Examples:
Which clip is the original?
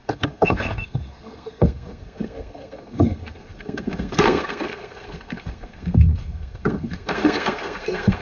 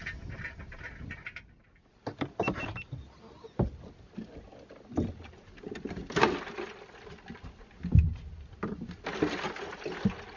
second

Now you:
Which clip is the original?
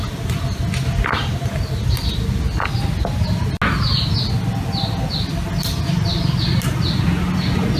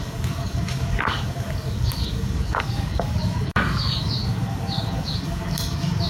first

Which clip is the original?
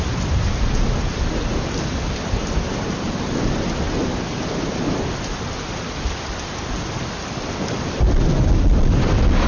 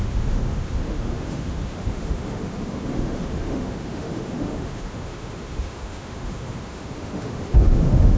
first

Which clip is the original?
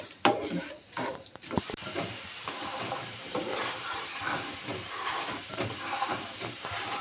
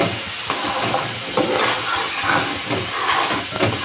second